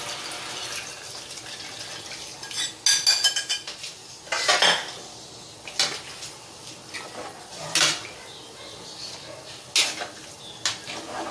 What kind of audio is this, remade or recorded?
recorded